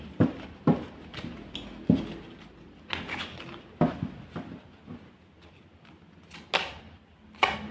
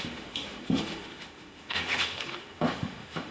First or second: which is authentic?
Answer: first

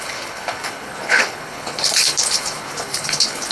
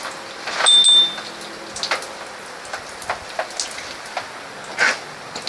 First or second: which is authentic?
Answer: second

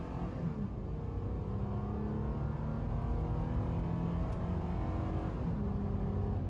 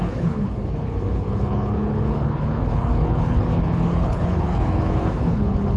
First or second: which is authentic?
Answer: first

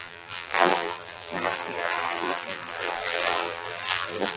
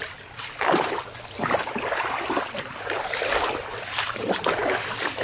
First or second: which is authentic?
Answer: second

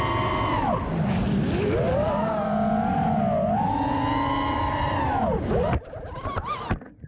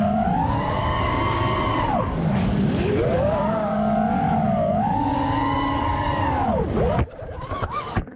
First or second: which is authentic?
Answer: first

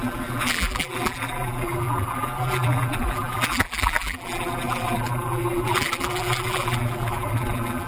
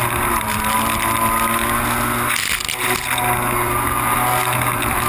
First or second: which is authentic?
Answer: second